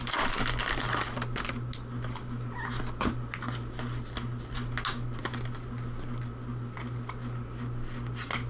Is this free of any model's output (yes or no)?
yes